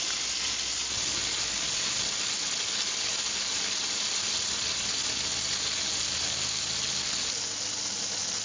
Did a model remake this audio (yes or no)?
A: no